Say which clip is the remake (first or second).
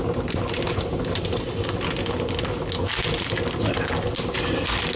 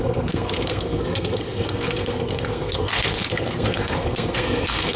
second